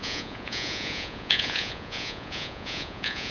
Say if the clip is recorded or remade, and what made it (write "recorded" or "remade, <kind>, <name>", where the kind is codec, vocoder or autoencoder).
remade, vocoder, Vocos